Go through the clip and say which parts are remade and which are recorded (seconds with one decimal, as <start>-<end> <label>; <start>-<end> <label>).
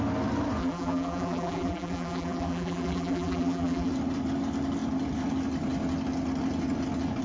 0.0-0.6 recorded; 0.6-3.9 remade; 3.9-7.2 recorded